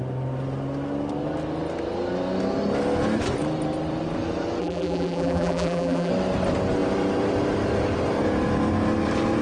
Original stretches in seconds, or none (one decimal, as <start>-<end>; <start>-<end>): 0.0-4.6; 6.1-9.4